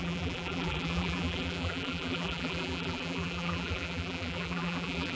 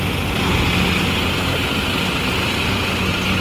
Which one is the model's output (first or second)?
first